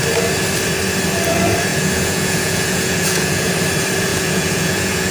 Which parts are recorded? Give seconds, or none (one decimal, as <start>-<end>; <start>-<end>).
0.0-1.7; 3.5-4.1